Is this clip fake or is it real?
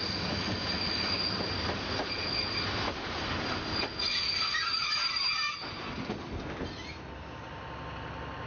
real